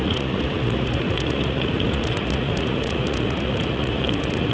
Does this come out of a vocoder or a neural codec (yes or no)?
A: yes